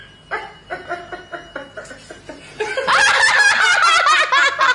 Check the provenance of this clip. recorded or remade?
recorded